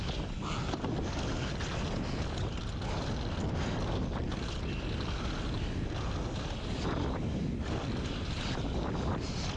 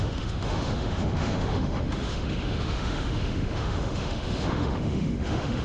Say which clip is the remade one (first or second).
second